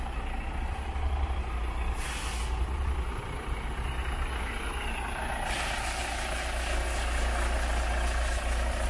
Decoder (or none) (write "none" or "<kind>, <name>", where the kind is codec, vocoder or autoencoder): none